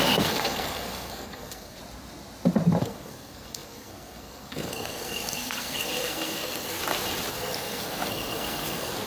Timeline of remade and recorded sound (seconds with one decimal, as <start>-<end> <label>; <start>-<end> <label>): 0.0-1.8 remade; 1.8-2.8 recorded; 2.8-6.8 remade; 6.8-7.3 recorded; 7.3-9.1 remade